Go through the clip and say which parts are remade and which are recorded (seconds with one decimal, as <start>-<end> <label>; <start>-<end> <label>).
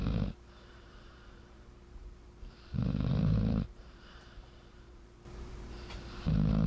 0.0-0.8 recorded; 0.8-6.7 remade